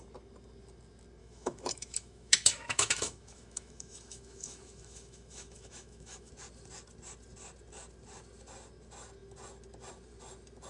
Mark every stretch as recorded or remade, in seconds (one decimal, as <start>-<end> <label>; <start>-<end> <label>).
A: 0.0-1.2 recorded; 1.2-6.3 remade; 6.3-10.7 recorded